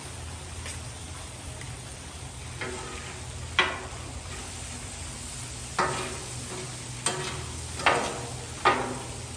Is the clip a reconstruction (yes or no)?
no